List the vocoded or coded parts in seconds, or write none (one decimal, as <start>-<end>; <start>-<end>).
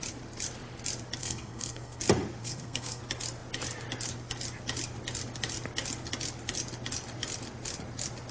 1.2-2.0; 2.4-3.0